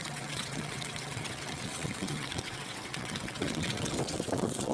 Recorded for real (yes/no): no